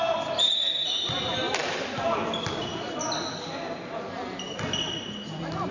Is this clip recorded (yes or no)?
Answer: yes